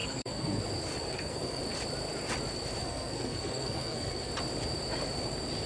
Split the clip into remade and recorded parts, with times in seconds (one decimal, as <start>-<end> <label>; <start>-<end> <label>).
0.0-0.6 remade; 0.6-1.0 recorded; 1.0-1.6 remade; 1.6-2.8 recorded; 2.8-4.3 remade; 4.3-5.7 recorded